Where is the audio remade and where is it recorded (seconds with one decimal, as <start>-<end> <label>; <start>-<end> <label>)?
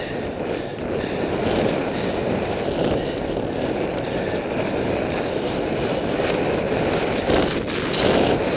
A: 0.0-8.6 recorded